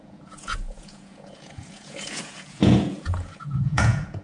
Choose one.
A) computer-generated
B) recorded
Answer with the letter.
A